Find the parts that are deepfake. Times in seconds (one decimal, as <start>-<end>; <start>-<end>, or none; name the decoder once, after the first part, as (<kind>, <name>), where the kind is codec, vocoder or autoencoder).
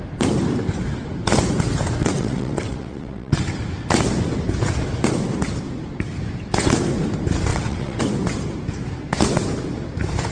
2.0-3.4 (vocoder, WaveNeXt); 7.5-8.0